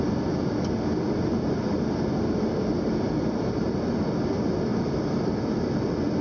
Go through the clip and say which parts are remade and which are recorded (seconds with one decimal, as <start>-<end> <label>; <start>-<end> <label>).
0.0-6.2 recorded